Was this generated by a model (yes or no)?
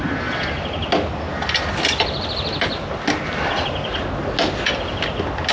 no